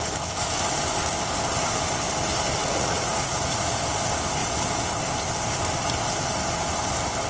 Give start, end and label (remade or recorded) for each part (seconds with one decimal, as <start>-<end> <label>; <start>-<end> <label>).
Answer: 0.0-2.6 recorded; 2.6-3.7 remade; 3.7-7.3 recorded